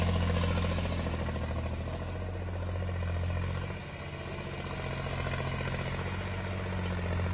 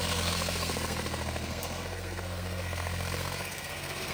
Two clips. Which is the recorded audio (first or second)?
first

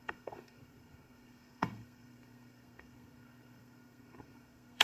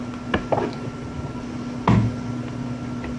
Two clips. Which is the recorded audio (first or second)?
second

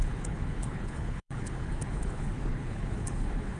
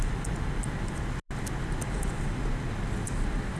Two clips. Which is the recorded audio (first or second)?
second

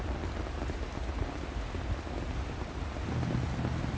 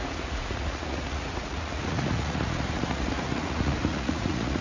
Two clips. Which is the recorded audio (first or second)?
first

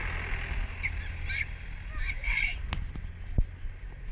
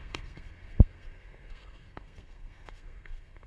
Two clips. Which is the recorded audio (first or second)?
first